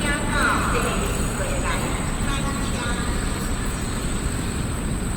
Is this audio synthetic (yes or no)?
yes